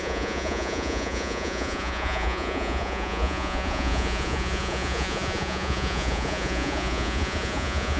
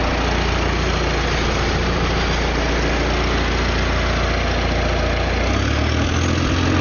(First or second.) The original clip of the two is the second